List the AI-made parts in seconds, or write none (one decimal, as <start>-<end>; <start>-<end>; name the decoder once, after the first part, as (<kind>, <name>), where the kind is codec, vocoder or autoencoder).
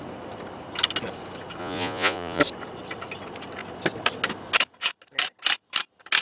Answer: 1.6-2.4 (vocoder, Vocos)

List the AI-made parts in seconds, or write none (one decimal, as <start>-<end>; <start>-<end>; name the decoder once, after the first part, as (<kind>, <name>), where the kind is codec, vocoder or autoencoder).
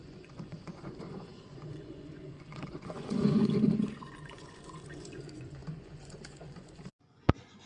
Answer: 0.0-7.7 (vocoder, Vocos)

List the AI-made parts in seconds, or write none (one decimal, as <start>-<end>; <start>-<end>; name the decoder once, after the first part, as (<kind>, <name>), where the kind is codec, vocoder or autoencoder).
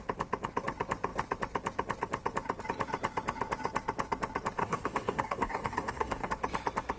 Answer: 4.6-6.3 (codec, DAC)